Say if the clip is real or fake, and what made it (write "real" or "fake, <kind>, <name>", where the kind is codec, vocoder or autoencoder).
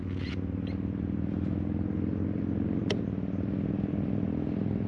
real